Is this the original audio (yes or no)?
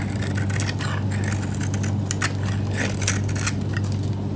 yes